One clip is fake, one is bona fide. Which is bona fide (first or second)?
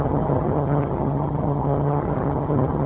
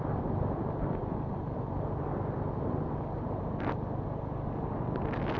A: second